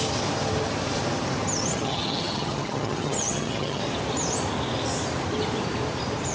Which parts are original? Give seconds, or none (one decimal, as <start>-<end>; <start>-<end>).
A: 0.0-1.7; 3.8-6.3